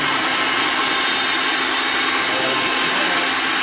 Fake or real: real